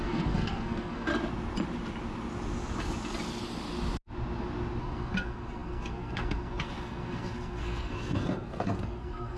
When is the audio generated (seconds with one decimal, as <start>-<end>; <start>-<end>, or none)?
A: 0.0-1.1; 4.8-9.4